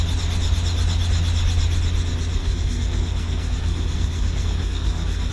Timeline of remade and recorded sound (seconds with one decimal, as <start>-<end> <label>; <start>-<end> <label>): 0.0-2.4 recorded; 2.4-5.3 remade